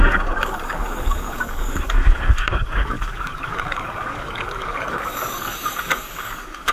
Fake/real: fake